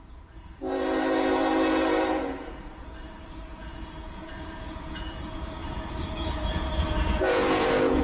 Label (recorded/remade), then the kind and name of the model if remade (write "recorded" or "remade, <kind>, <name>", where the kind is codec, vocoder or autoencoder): remade, vocoder, Vocos